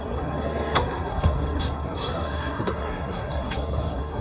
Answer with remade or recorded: remade